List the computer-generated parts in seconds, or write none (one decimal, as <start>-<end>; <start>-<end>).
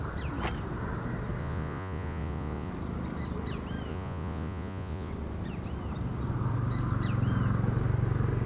1.4-2.7; 3.9-5.1